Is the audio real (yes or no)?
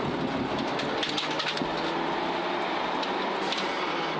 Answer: yes